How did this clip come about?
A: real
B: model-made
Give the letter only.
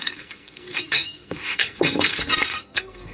B